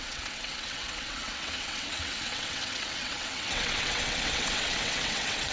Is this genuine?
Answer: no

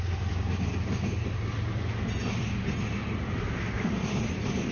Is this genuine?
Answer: yes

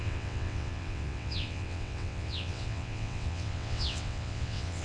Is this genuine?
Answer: no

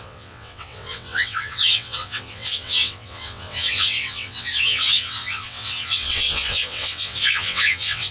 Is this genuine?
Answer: no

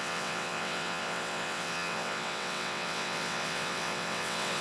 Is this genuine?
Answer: no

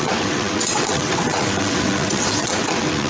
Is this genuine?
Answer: no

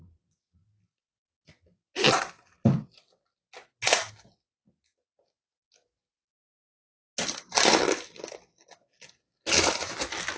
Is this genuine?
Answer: yes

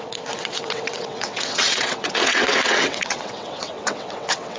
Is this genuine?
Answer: no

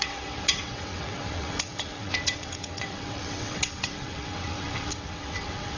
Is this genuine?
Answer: no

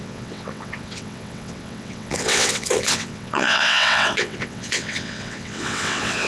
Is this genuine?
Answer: no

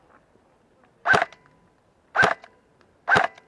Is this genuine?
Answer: yes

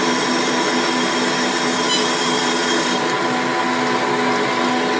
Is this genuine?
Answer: yes